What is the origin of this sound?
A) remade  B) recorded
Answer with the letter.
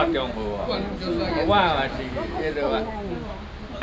B